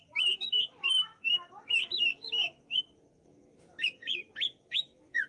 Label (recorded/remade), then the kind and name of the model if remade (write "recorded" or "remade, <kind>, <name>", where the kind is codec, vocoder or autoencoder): remade, autoencoder, DAC-VAE